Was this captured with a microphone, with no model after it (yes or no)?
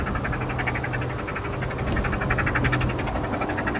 yes